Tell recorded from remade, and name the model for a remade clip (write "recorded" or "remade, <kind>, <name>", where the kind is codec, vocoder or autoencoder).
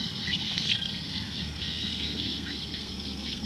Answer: remade, codec, SNAC